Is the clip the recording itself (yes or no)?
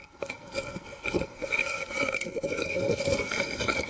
no